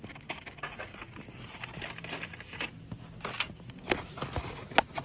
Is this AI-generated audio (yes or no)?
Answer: no